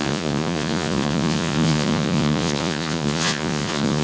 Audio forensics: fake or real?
fake